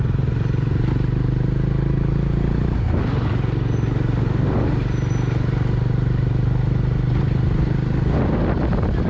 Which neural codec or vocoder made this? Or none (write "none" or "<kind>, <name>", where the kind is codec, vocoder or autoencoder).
none